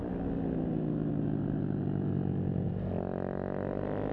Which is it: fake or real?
real